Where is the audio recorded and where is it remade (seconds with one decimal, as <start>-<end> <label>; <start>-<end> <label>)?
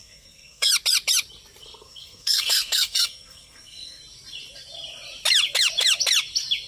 0.0-0.7 remade; 0.7-1.6 recorded; 1.6-4.0 remade; 4.0-6.7 recorded